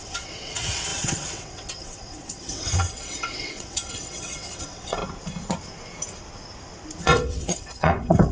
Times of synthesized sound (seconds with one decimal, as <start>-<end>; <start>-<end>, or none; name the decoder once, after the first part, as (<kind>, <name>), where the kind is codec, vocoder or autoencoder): 0.0-5.0 (vocoder, WaveNeXt); 7.0-8.3